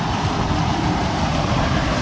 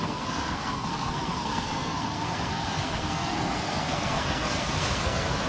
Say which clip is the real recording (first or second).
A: first